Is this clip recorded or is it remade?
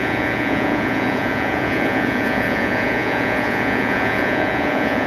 remade